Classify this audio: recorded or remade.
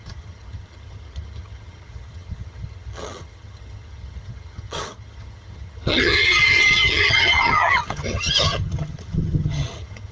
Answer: remade